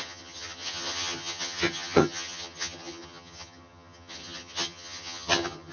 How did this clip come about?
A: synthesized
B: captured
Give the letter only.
A